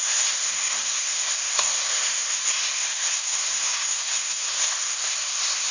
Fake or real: fake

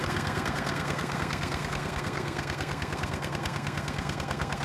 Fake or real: fake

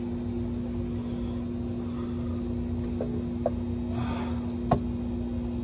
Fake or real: real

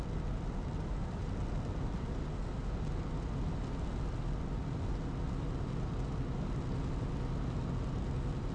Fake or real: real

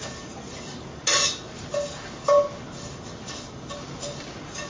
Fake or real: real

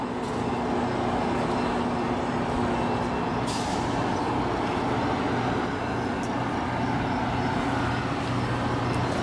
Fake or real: real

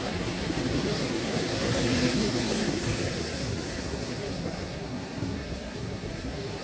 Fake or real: fake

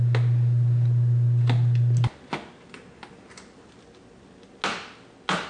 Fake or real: real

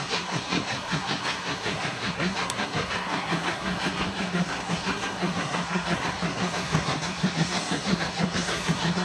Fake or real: fake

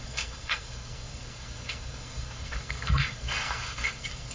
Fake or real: fake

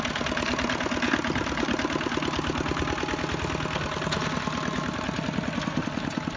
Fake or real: real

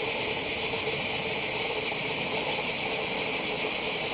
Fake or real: real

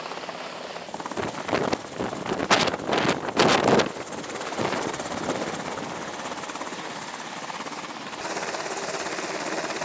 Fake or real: real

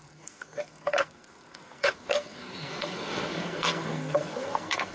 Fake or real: fake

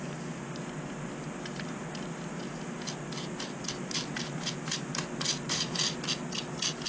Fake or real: real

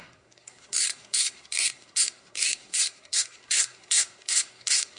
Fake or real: fake